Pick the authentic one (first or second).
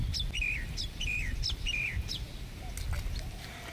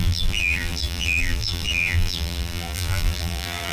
first